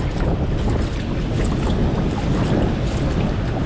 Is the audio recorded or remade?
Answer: recorded